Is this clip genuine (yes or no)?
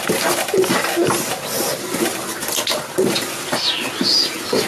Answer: yes